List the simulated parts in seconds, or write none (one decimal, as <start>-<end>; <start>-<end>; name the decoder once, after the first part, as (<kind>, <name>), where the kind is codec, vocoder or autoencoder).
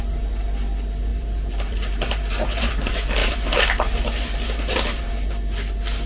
1.1-2.7 (vocoder, BigVGAN v2); 3.2-5.3